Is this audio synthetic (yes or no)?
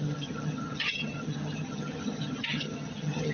yes